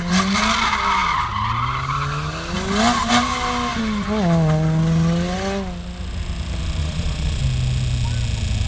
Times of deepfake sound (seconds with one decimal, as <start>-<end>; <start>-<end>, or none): 6.8-7.4